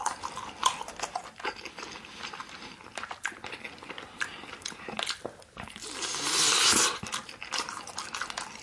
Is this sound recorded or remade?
recorded